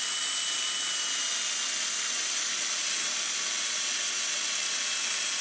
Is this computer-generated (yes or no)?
no